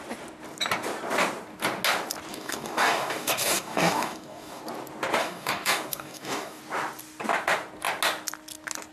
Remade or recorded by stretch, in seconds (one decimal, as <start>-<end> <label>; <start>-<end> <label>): 0.0-2.3 recorded; 2.3-4.6 remade; 4.6-5.2 recorded; 5.2-6.6 remade; 6.6-8.9 recorded